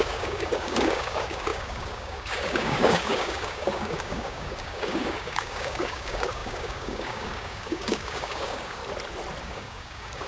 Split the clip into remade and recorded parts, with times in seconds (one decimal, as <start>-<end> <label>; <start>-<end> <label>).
0.0-8.8 remade; 8.8-9.4 recorded; 9.4-10.3 remade